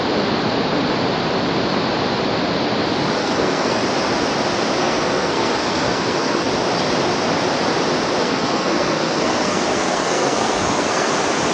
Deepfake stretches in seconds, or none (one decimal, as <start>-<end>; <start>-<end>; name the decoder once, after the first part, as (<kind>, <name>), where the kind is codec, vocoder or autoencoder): 3.2-3.8 (codec, SNAC); 4.8-6.5; 8.2-11.1